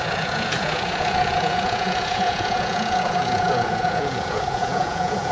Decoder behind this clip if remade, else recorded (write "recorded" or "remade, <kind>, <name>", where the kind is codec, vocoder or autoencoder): remade, vocoder, Vocos